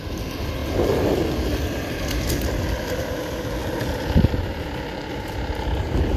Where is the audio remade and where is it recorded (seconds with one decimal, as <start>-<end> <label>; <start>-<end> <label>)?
0.0-6.2 recorded

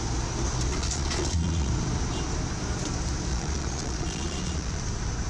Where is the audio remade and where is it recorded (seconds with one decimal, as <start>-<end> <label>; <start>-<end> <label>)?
0.0-0.7 recorded; 0.7-1.7 remade; 1.7-3.3 recorded; 3.3-4.8 remade; 4.8-5.3 recorded

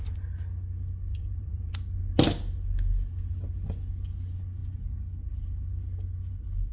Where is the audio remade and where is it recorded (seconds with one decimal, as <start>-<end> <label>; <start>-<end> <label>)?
0.0-1.1 recorded; 1.1-1.7 remade; 1.7-6.7 recorded

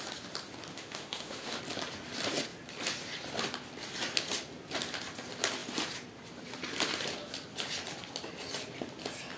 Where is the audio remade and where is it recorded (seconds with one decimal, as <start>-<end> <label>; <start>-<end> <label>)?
0.0-0.7 recorded; 0.7-1.6 remade; 1.6-9.4 recorded

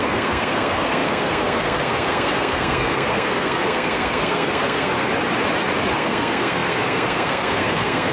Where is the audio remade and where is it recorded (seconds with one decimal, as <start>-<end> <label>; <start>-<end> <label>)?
0.0-5.1 remade; 5.1-5.9 recorded; 5.9-8.1 remade

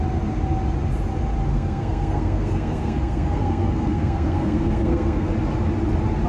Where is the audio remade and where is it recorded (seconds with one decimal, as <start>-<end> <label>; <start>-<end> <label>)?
0.0-1.5 recorded; 1.5-5.3 remade; 5.3-6.3 recorded

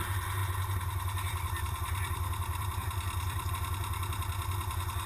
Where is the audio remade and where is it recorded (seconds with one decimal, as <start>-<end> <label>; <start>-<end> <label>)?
0.0-0.4 recorded; 0.4-3.5 remade; 3.5-5.1 recorded

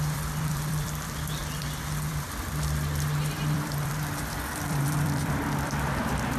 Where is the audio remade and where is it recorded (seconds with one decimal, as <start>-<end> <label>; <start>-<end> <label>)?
0.0-6.4 remade